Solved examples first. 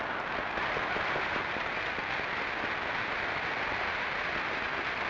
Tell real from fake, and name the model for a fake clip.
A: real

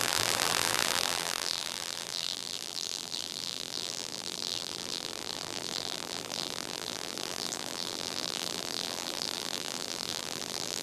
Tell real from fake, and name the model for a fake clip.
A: fake, vocoder, BigVGAN v2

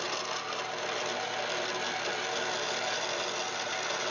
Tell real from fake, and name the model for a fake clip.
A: real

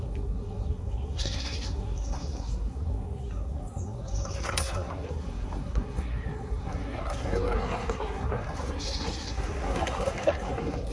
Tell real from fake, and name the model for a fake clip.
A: fake, codec, SNAC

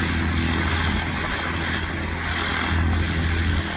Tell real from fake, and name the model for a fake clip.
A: real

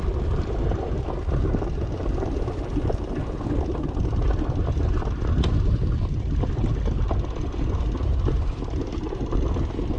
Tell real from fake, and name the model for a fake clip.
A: real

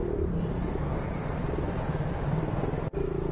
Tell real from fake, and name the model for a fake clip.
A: real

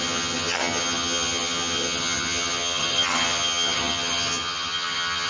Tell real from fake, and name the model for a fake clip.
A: fake, vocoder, HiFi-GAN